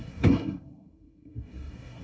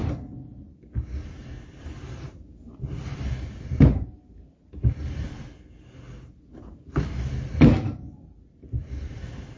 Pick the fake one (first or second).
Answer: first